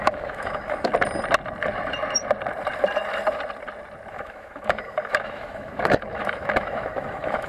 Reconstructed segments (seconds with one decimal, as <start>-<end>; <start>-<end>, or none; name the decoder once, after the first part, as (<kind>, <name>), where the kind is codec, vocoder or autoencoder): 0.0-0.9 (autoencoder, DAC-VAE); 4.1-7.5